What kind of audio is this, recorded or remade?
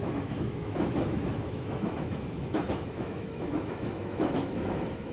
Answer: remade